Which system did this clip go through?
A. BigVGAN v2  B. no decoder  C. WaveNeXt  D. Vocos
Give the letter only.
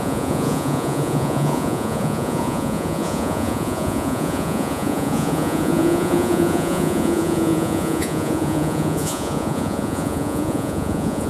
D